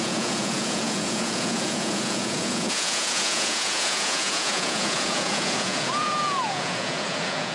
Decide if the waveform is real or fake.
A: fake